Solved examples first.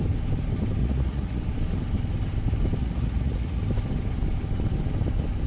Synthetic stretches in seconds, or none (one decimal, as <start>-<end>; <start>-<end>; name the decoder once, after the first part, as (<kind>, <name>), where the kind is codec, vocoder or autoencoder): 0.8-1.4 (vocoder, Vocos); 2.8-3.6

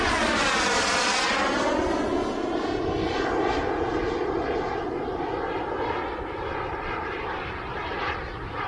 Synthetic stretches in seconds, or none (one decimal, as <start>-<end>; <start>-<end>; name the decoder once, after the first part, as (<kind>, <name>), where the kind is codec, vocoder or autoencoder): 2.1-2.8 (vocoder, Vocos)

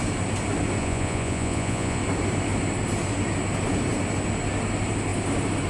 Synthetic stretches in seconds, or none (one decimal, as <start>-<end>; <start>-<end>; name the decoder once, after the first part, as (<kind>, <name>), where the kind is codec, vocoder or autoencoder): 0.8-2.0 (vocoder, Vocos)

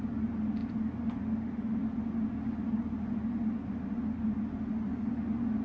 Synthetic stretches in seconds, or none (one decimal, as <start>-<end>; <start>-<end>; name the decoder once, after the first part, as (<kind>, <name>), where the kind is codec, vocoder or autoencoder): none

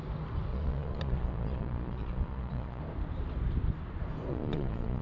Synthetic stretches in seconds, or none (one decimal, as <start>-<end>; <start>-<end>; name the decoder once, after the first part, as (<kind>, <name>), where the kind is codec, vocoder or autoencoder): 0.5-2.8 (vocoder, Vocos); 4.3-5.0